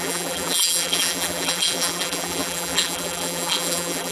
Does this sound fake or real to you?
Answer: fake